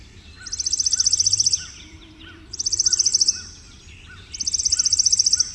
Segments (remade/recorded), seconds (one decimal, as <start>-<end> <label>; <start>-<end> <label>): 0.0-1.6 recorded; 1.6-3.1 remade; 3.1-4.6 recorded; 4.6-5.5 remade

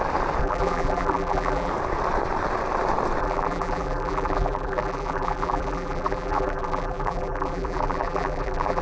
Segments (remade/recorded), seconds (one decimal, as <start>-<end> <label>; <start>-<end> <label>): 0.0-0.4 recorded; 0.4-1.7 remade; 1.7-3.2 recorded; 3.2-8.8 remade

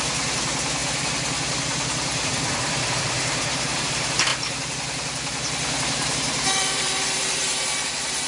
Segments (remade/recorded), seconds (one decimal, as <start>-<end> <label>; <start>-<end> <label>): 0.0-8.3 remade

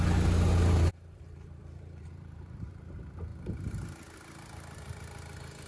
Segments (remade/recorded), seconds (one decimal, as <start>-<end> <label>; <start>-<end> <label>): 0.0-3.3 remade; 3.3-5.7 recorded

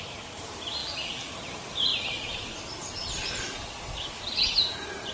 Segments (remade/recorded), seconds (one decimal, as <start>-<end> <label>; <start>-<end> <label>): 0.0-0.8 recorded; 0.8-1.3 remade; 1.3-5.1 recorded